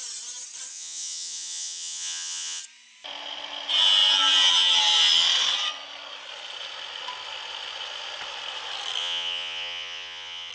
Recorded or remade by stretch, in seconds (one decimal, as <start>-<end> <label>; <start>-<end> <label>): 0.0-0.7 recorded; 0.7-2.6 remade; 2.6-9.0 recorded; 9.0-10.5 remade